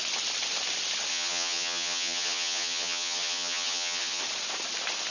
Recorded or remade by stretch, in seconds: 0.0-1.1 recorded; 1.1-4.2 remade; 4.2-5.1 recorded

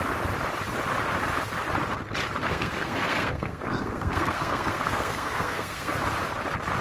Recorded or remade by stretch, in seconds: 0.0-2.5 recorded; 2.5-5.9 remade; 5.9-6.8 recorded

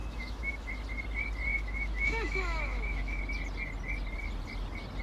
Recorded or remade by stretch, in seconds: 0.0-0.7 remade; 0.7-1.5 recorded; 1.5-3.2 remade; 3.2-5.0 recorded

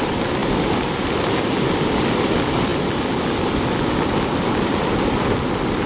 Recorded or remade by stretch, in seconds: 0.0-5.9 recorded